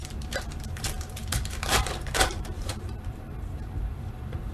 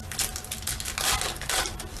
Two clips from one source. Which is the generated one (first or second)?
first